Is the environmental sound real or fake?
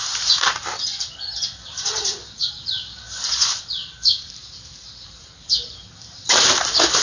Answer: fake